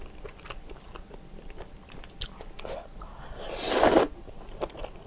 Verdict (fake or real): real